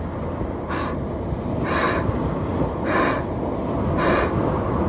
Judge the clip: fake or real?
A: real